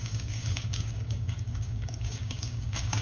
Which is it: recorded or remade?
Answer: remade